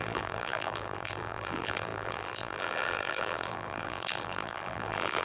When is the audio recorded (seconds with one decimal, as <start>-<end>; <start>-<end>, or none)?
none